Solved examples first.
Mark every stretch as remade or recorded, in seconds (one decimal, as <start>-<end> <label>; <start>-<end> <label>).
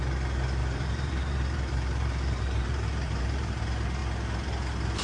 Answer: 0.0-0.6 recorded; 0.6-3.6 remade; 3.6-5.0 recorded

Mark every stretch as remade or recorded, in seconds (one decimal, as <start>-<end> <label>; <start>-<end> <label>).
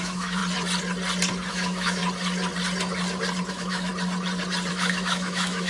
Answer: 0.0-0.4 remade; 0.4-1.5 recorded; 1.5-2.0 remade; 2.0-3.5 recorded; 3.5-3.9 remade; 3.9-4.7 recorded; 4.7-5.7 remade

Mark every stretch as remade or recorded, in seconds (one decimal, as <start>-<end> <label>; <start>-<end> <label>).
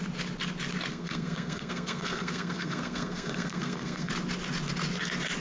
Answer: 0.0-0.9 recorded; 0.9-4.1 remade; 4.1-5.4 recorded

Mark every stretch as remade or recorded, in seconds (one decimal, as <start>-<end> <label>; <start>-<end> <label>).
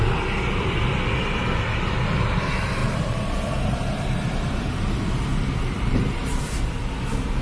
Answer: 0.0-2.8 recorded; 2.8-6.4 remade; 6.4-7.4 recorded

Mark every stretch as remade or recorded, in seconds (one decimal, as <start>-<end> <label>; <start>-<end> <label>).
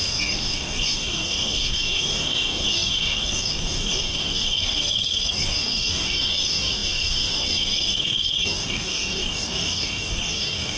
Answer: 0.0-10.8 remade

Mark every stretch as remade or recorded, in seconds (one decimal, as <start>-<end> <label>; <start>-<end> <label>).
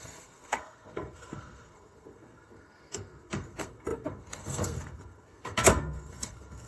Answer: 0.0-6.7 remade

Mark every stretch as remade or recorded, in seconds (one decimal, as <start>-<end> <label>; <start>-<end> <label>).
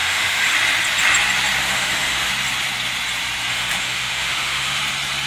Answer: 0.0-0.5 remade; 0.5-1.6 recorded; 1.6-2.3 remade; 2.3-3.5 recorded; 3.5-4.8 remade; 4.8-5.3 recorded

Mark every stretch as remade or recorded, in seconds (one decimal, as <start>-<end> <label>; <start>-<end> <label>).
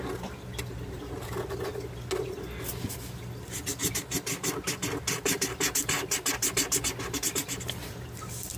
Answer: 0.0-8.6 recorded